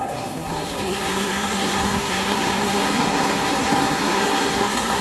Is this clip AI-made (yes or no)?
yes